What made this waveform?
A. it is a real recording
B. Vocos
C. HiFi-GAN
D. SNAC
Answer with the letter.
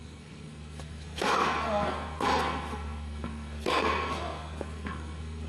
D